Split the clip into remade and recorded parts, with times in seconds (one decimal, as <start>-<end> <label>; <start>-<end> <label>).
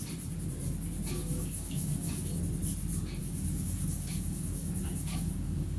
0.0-1.2 recorded; 1.2-2.4 remade; 2.4-3.2 recorded; 3.2-5.8 remade